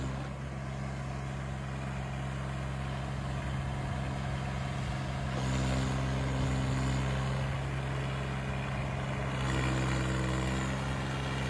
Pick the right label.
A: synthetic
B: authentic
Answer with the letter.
B